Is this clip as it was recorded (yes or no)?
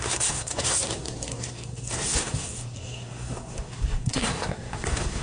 no